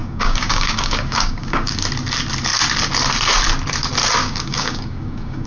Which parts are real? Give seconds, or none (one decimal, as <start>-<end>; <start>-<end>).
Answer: 1.8-4.2